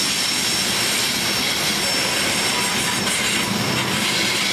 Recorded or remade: recorded